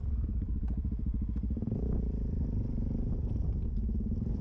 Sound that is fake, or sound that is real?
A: fake